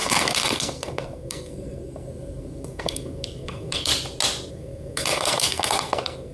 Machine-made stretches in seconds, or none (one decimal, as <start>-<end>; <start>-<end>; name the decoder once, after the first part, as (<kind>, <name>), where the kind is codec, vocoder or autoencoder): 0.0-3.9 (codec, SNAC); 4.5-6.3